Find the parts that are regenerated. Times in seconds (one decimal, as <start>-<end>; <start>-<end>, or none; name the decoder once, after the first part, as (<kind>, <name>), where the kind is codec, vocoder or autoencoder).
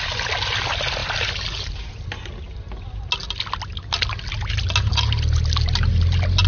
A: 1.0-1.7 (vocoder, BigVGAN v2)